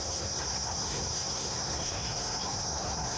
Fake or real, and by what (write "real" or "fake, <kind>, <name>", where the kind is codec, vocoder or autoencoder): fake, codec, SNAC